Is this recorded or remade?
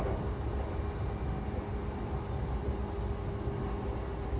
recorded